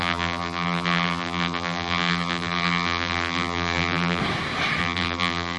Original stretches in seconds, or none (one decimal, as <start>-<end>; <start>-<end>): 4.2-4.8